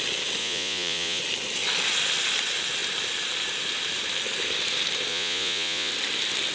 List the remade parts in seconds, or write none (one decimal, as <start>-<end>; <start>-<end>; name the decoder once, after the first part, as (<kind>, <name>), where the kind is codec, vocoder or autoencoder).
0.4-1.2 (vocoder, Vocos); 5.1-5.9